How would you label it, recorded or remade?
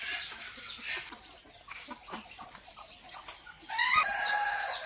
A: recorded